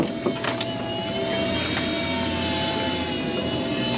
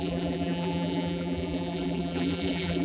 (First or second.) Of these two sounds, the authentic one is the first